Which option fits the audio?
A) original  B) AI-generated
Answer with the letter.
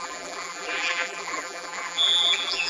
B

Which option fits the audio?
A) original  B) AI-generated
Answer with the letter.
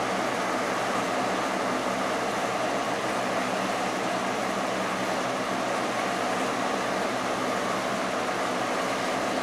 A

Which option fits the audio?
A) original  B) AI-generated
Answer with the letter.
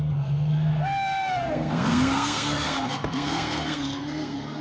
B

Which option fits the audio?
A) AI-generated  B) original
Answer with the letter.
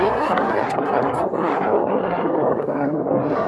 A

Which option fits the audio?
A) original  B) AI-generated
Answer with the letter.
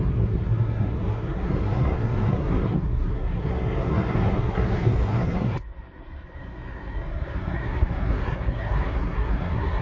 B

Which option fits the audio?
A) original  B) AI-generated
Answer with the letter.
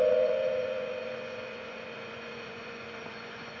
B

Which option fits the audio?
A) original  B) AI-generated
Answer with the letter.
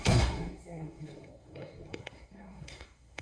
B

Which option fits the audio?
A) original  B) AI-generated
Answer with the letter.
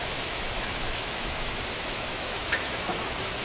B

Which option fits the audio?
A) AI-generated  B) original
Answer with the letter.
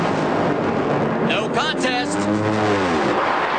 B